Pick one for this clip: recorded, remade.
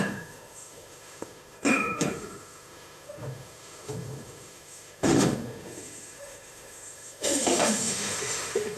remade